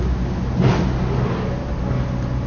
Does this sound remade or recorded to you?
recorded